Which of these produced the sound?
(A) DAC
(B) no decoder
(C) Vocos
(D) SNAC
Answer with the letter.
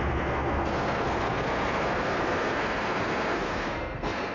D